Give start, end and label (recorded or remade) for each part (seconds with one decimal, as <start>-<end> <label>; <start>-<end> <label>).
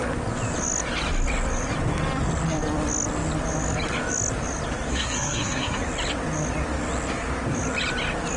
0.0-4.9 recorded; 4.9-5.8 remade; 5.8-8.4 recorded